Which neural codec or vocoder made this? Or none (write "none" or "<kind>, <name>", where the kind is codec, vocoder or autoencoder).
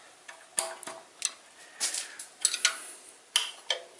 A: none